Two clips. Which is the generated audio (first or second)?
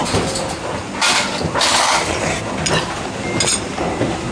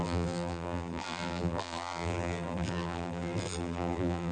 second